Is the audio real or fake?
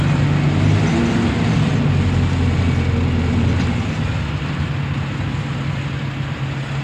real